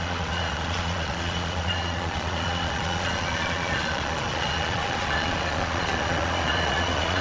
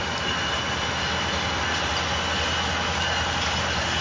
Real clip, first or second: second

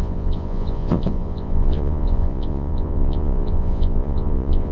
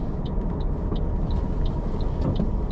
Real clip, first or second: second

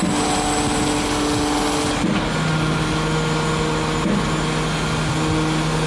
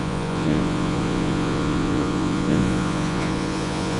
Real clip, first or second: first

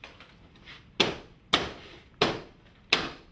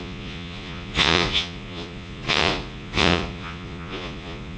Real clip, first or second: first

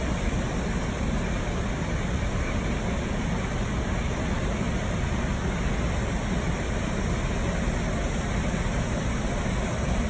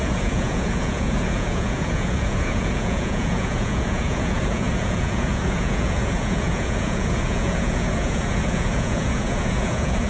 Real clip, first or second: first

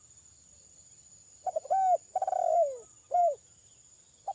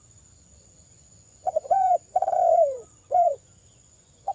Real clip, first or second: first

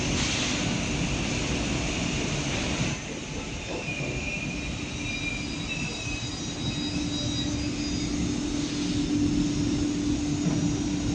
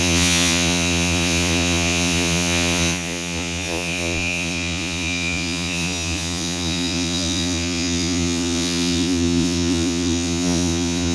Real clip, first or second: first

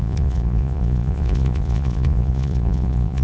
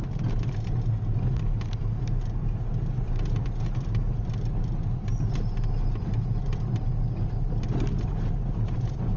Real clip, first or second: second